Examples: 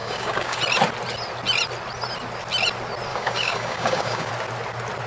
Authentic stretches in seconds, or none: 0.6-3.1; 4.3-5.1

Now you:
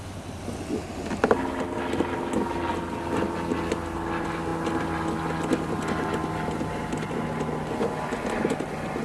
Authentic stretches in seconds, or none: 0.0-9.0

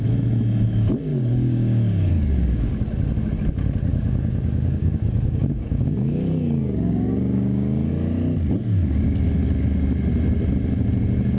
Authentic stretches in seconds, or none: 0.0-1.1; 2.7-3.9; 7.9-11.4

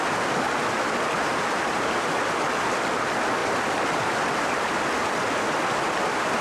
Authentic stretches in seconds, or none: 0.0-6.4